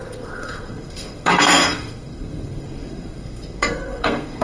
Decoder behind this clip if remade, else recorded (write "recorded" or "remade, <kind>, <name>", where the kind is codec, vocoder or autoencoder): remade, codec, SNAC